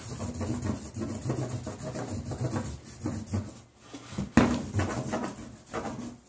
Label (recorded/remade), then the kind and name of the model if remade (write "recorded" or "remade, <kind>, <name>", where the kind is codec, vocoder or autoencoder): recorded